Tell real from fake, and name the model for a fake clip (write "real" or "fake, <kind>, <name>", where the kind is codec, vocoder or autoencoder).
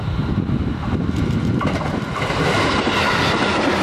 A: real